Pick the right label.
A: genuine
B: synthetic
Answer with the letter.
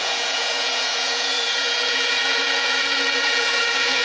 B